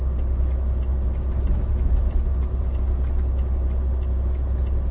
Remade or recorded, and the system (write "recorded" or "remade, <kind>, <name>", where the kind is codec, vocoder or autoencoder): recorded